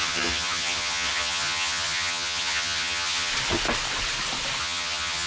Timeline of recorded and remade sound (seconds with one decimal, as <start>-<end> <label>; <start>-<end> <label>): 0.0-3.3 remade; 3.3-4.6 recorded; 4.6-5.3 remade